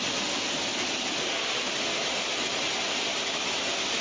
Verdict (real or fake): real